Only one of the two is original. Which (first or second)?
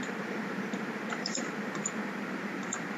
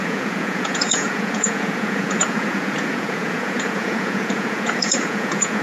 first